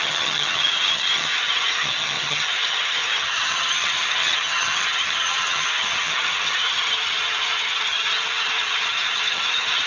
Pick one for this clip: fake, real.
fake